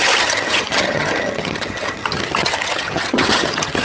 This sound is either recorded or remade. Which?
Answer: remade